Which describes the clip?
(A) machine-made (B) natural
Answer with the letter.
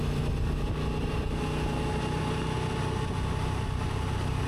B